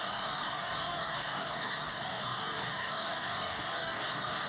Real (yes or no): no